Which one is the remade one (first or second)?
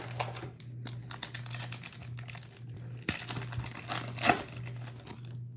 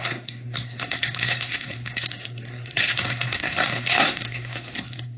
second